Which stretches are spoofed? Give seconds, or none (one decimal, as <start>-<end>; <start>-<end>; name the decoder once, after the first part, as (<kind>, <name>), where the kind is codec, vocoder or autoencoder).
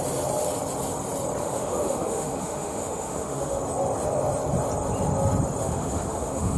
1.4-3.6 (autoencoder, DAC-VAE); 5.6-6.6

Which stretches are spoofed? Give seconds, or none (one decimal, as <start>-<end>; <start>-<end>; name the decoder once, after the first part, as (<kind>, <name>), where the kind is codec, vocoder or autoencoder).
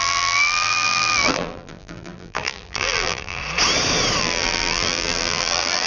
0.0-3.4 (vocoder, BigVGAN v2); 4.2-5.9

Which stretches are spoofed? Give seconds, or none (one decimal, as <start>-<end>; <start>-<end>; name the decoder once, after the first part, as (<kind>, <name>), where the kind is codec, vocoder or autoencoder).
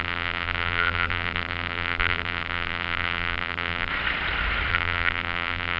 0.0-3.9 (vocoder, BigVGAN v2); 4.7-5.8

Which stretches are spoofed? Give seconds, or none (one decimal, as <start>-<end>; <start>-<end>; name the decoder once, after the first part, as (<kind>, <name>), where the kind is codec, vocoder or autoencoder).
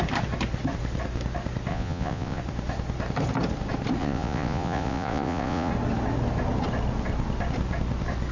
1.7-2.4 (vocoder, Vocos); 4.0-5.7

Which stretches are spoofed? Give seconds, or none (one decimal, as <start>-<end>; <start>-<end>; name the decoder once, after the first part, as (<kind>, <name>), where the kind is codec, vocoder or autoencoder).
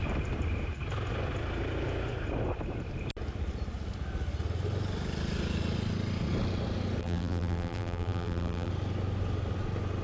7.0-8.7 (vocoder, BigVGAN v2)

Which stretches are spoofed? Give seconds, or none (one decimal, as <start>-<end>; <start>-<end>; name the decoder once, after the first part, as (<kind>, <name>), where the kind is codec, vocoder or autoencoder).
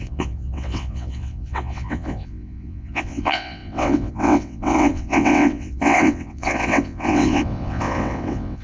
0.0-8.6 (vocoder, WaveNeXt)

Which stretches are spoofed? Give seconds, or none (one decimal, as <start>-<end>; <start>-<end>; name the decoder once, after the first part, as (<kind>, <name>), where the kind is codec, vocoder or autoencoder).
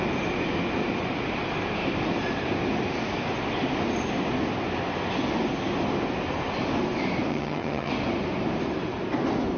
7.3-7.9 (vocoder, HiFi-GAN)